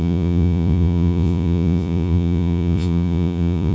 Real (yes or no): no